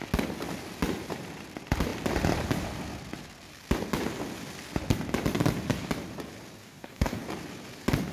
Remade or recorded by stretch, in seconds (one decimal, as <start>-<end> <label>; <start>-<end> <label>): 0.0-6.6 recorded; 6.6-7.2 remade; 7.2-8.1 recorded